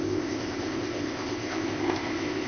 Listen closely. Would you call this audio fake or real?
fake